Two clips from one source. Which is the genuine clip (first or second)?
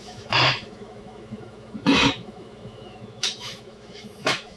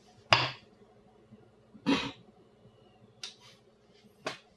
second